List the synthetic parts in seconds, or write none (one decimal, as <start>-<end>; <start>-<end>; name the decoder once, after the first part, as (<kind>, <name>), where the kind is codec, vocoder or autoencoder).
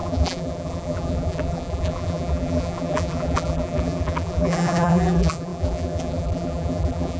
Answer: 0.0-7.2 (vocoder, BigVGAN v2)